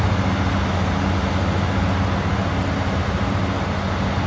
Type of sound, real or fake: real